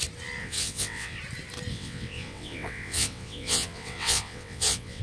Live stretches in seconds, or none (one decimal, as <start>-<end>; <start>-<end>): 0.0-0.4; 1.2-1.7